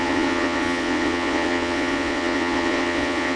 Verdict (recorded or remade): remade